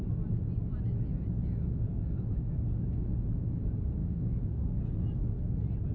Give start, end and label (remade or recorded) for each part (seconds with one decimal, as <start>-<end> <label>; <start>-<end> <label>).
0.0-4.0 recorded; 4.0-4.8 remade; 4.8-5.9 recorded